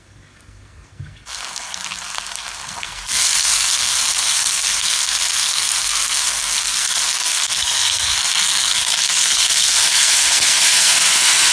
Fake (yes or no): yes